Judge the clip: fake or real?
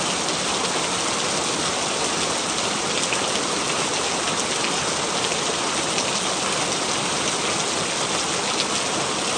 real